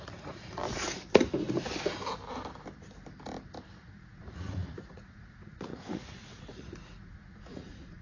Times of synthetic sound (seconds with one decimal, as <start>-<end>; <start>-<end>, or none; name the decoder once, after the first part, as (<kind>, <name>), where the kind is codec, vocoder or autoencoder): 0.0-0.6 (vocoder, Vocos); 3.7-8.0